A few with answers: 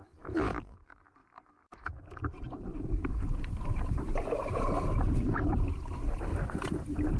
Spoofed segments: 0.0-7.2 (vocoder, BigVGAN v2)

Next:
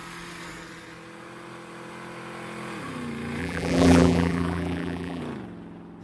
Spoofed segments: 3.4-5.2 (vocoder, BigVGAN v2)

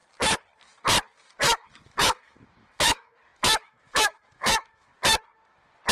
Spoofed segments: 1.3-4.9 (autoencoder, DAC-VAE)

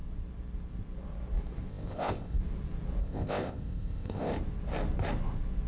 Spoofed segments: 1.7-2.4 (codec, ZipCodec); 3.0-4.3

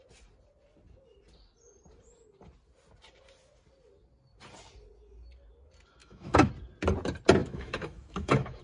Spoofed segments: 6.0-6.5 (autoencoder, DAC-VAE); 7.4-8.6

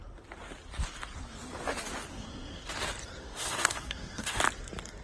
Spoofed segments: 2.1-2.7 (codec, SNAC); 3.2-4.4

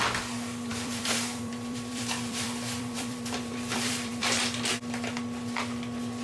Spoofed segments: 0.7-4.4 (vocoder, BigVGAN v2)